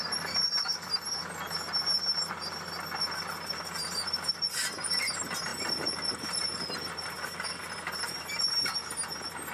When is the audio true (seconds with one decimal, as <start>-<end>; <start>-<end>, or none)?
0.0-9.5

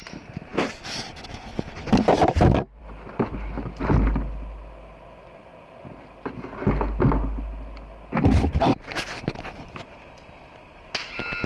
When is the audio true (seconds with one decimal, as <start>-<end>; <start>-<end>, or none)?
0.0-11.5

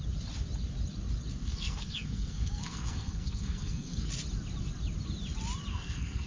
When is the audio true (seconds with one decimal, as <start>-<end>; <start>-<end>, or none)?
0.0-1.4; 4.1-5.7